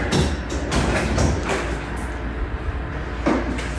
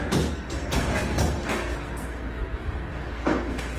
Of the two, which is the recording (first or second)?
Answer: first